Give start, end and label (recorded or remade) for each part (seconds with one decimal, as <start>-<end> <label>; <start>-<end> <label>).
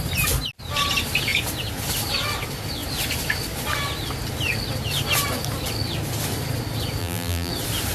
0.0-7.0 recorded; 7.0-7.5 remade; 7.5-7.9 recorded